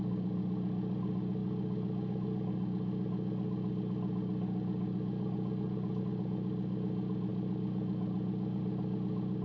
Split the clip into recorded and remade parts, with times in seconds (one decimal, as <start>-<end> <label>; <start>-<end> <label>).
0.0-9.4 recorded